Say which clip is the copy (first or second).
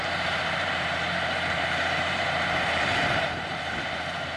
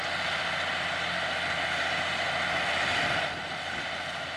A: first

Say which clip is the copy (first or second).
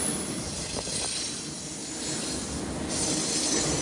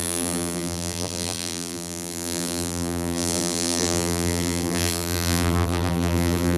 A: second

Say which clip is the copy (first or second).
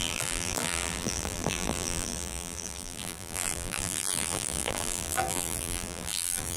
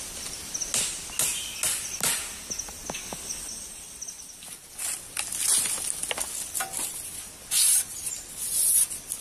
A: first